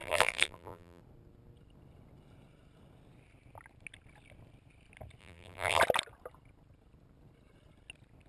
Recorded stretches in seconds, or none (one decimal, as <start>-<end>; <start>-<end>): 1.0-5.2; 5.8-8.3